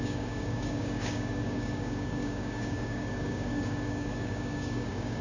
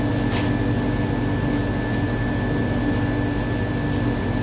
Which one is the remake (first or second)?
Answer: first